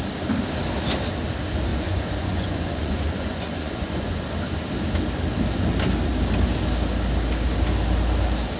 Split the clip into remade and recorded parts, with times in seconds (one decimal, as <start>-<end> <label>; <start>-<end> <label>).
0.0-1.7 recorded; 1.7-4.2 remade; 4.2-8.6 recorded